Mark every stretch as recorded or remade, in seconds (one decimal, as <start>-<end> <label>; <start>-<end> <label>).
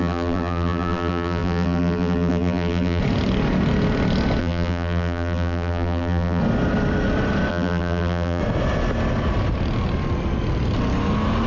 0.0-3.0 remade; 3.0-4.4 recorded; 4.4-6.4 remade; 6.4-7.5 recorded; 7.5-8.4 remade; 8.4-11.5 recorded